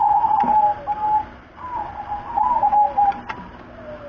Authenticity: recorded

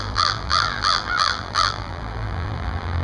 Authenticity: remade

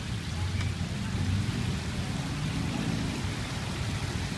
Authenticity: recorded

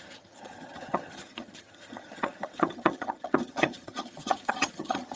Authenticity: remade